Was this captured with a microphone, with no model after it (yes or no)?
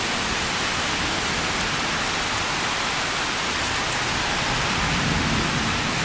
yes